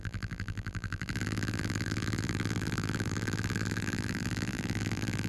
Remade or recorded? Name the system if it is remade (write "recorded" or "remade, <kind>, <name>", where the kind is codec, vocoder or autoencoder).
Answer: remade, vocoder, BigVGAN v2